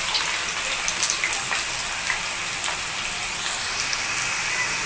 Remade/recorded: recorded